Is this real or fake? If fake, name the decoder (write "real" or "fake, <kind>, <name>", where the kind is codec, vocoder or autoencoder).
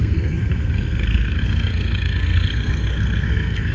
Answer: fake, codec, SNAC